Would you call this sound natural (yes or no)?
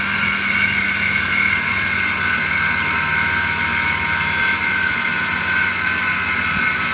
yes